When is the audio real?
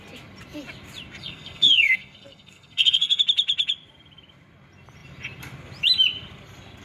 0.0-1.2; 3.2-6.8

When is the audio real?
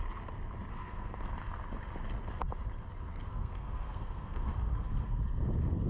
0.0-0.7; 1.3-3.3; 5.2-5.9